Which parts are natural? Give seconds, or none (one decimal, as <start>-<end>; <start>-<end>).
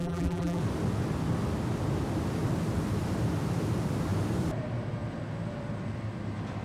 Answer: 0.6-6.6